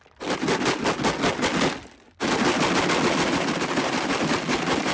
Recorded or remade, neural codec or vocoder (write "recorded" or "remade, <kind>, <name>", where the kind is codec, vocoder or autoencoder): recorded